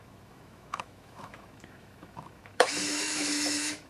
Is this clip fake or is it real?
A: fake